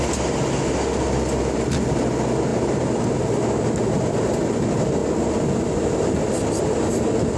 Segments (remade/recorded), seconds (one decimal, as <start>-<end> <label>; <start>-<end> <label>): 0.0-2.5 recorded; 2.5-3.2 remade; 3.2-7.4 recorded